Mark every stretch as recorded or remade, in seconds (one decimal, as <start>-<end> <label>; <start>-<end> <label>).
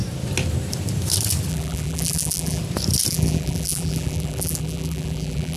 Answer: 0.0-1.5 recorded; 1.5-2.6 remade; 2.6-3.1 recorded; 3.1-5.6 remade